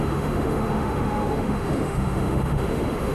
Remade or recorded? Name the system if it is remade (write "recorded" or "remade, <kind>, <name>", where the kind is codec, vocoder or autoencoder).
remade, autoencoder, DAC-VAE